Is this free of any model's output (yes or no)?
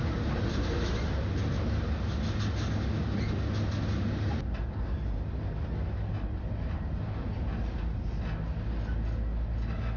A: yes